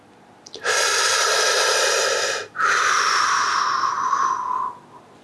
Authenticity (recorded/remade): recorded